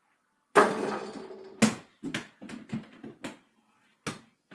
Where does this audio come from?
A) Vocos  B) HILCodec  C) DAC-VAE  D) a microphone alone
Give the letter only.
D